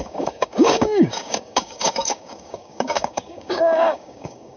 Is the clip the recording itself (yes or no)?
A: no